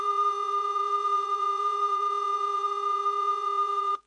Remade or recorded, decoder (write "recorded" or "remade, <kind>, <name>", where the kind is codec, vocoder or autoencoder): remade, vocoder, Vocos